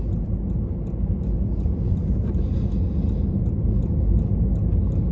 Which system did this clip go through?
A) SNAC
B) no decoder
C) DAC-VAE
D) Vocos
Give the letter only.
B